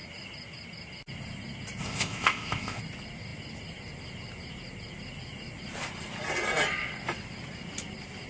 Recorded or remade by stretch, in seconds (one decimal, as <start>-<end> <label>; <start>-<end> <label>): 0.0-1.8 recorded; 1.8-2.8 remade; 2.8-8.3 recorded